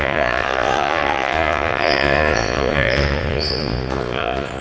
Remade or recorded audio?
remade